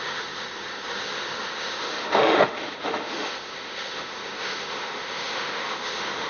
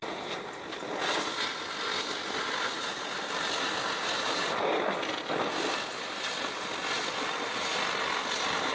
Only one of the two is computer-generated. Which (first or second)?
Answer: first